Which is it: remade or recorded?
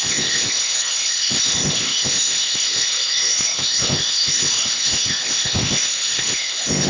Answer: remade